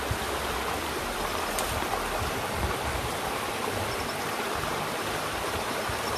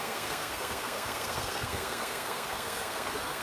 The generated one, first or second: second